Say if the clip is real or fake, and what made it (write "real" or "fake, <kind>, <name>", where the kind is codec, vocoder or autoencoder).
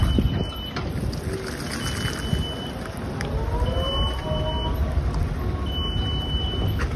real